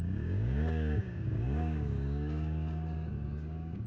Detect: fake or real fake